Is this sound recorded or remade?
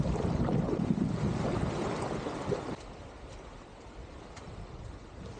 recorded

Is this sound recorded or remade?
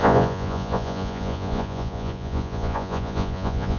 remade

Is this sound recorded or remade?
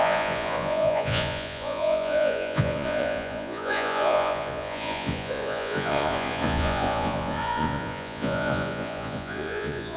remade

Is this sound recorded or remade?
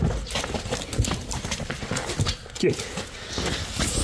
recorded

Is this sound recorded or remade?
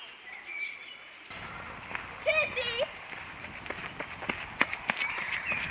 recorded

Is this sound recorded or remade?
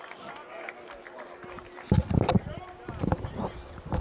recorded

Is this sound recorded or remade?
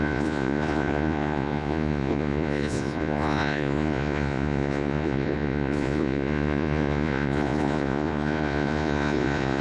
remade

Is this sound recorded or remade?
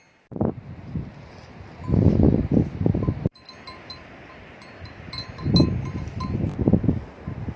recorded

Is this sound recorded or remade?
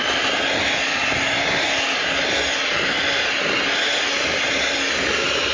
recorded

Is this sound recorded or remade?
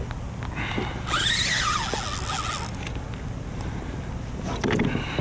recorded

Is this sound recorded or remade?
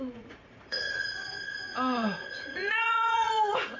remade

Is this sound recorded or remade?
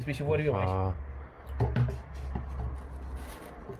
recorded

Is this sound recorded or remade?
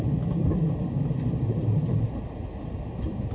recorded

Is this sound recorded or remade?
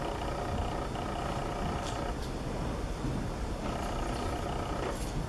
recorded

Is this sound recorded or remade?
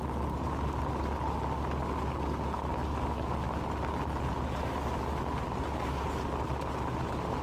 recorded